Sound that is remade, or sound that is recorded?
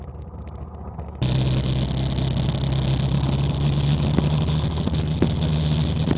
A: recorded